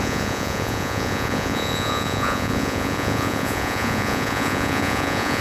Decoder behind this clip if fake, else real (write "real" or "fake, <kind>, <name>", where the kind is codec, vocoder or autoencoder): fake, vocoder, Vocos